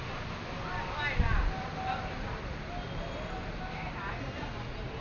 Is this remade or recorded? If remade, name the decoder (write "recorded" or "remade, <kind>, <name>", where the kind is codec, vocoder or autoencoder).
recorded